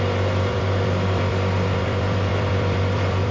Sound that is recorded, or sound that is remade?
remade